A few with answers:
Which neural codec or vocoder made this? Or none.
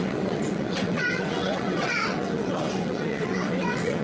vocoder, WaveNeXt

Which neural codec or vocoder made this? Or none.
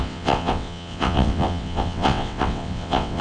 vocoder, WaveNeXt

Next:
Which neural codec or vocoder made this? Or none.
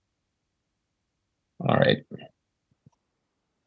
none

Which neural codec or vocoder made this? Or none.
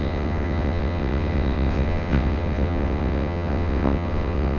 vocoder, WaveNeXt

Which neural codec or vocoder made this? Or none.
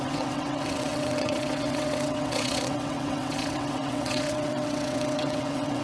vocoder, WaveNeXt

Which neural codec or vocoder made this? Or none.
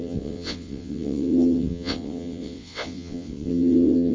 vocoder, WaveNeXt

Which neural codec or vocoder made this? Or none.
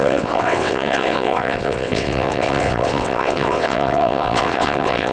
vocoder, WaveNeXt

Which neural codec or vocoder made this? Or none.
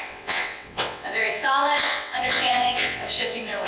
vocoder, WaveNeXt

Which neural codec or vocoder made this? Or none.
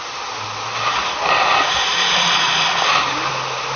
none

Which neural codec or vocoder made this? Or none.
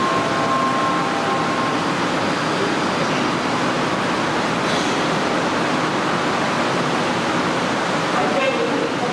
none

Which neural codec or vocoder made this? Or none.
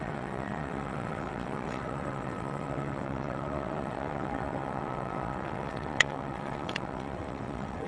vocoder, WaveNeXt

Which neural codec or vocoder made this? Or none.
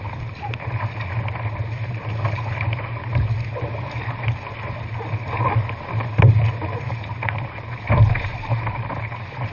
none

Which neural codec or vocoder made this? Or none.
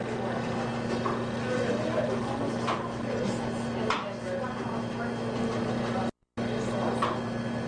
none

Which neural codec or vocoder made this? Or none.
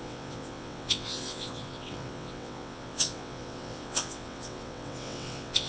vocoder, WaveNeXt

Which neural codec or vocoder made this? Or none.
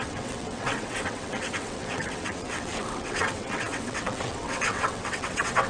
vocoder, WaveNeXt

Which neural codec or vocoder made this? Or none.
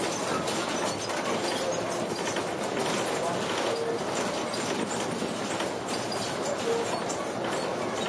none